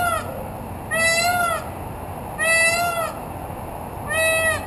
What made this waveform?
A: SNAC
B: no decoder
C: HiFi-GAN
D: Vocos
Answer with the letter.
B